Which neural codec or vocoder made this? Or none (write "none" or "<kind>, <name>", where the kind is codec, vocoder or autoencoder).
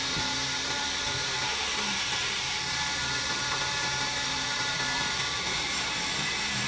vocoder, BigVGAN v2